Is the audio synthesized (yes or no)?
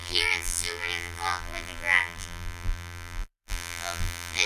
yes